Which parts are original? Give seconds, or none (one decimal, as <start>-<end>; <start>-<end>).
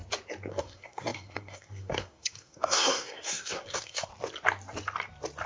0.0-0.5; 4.1-5.5